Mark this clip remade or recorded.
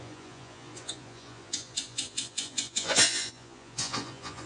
remade